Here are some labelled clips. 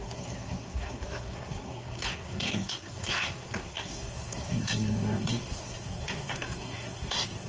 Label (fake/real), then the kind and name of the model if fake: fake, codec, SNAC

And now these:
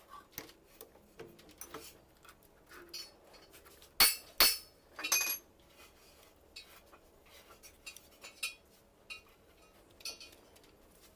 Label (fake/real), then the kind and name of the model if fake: real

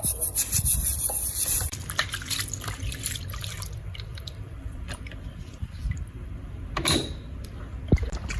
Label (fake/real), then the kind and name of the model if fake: fake, vocoder, BigVGAN v2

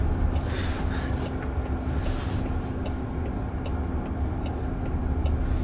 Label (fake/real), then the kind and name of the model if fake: real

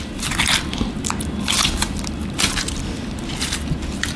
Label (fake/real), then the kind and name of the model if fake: real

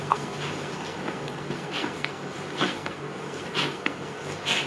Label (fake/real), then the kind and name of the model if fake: fake, codec, SNAC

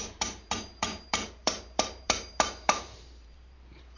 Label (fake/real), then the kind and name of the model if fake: fake, vocoder, BigVGAN v2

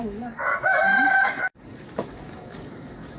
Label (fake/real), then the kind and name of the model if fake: fake, codec, DAC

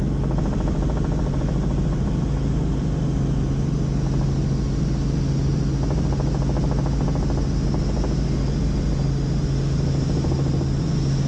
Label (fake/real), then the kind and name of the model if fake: real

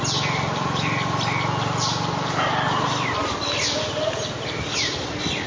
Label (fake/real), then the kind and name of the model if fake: real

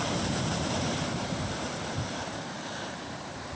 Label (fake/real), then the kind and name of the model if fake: fake, vocoder, BigVGAN v2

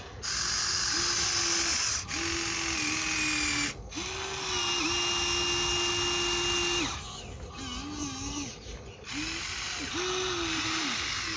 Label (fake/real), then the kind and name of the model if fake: real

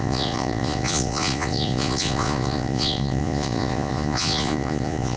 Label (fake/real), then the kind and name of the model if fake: fake, vocoder, Vocos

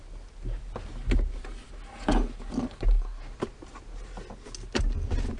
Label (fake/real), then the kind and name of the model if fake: real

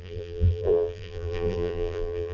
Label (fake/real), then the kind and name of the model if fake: fake, vocoder, BigVGAN v2